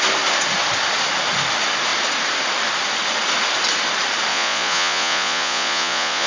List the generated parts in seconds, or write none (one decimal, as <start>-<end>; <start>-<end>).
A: 4.3-6.3